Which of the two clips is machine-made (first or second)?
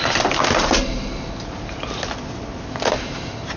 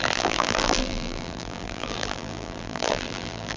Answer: second